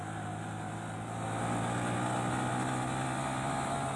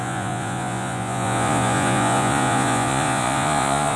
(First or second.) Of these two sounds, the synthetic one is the second